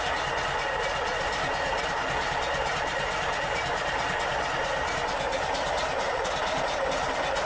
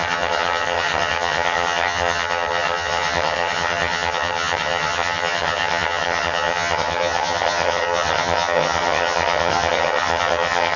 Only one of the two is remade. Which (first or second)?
second